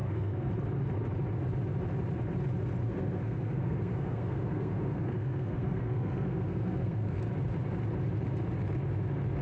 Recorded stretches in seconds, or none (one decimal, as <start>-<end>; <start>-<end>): 0.5-2.8; 7.2-9.4